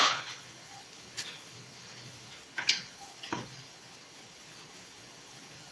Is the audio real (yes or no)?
no